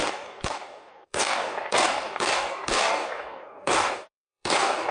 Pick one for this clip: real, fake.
fake